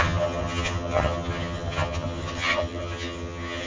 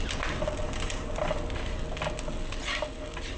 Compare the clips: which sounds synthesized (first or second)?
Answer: first